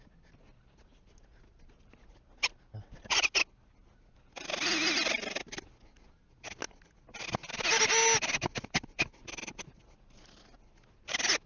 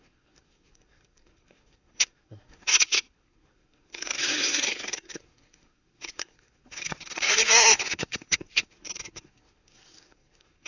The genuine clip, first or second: first